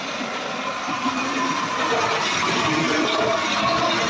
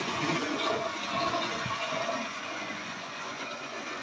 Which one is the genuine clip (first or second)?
first